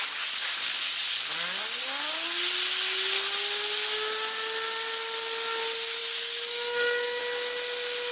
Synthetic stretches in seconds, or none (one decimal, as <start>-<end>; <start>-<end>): 6.0-7.2